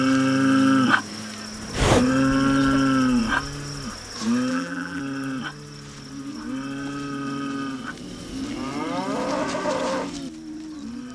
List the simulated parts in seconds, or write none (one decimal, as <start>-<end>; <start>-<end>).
4.5-5.0